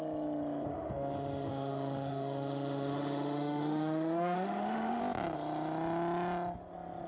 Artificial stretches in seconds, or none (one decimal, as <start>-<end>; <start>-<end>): 0.7-5.0

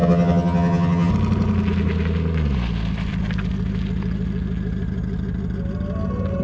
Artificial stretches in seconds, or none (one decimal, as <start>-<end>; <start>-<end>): 0.0-1.1

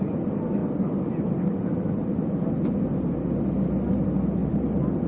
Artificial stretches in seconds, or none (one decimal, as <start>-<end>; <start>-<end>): 0.6-1.3; 4.4-5.1

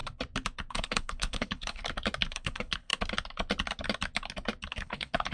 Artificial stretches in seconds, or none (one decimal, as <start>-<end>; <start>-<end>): 0.7-1.8; 2.3-2.9; 4.7-5.3

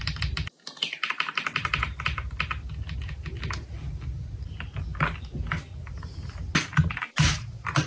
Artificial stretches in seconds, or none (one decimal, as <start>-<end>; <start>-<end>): none